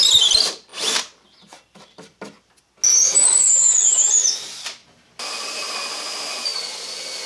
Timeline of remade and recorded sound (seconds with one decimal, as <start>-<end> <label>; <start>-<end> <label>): 0.0-3.4 recorded; 3.4-4.1 remade; 4.1-7.3 recorded